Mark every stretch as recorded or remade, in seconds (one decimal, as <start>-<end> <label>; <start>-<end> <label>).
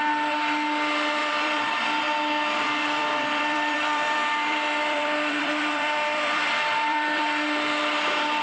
0.0-1.2 recorded; 1.2-2.0 remade; 2.0-2.8 recorded; 2.8-7.2 remade; 7.2-8.4 recorded